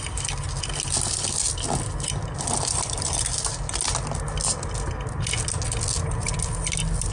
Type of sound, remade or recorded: recorded